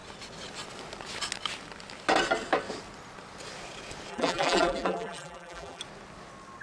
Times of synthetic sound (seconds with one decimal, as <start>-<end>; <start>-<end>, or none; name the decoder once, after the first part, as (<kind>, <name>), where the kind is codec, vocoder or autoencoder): 4.1-5.8 (vocoder, BigVGAN v2)